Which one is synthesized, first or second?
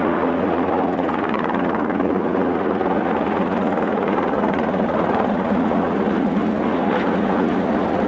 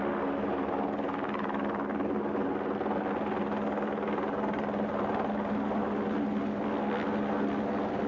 first